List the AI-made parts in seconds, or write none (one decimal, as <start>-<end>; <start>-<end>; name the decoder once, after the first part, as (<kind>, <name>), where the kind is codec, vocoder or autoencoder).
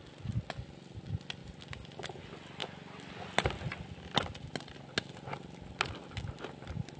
none